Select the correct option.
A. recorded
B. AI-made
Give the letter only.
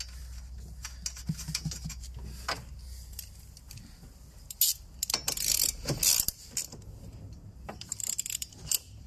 A